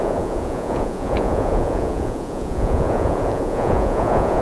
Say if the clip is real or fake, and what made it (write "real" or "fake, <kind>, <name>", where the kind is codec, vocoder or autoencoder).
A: fake, vocoder, Vocos